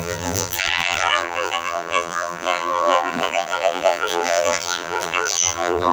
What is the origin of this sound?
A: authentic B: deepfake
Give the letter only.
B